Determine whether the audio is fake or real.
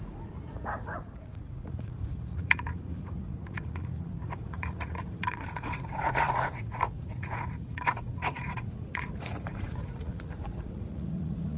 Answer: fake